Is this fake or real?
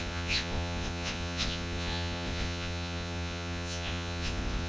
fake